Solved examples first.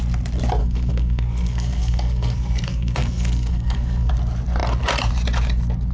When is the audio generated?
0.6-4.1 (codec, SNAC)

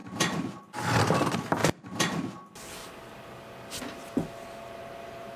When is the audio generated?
none

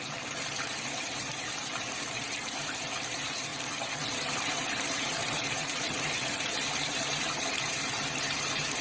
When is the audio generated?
0.0-3.5 (vocoder, BigVGAN v2); 4.3-8.8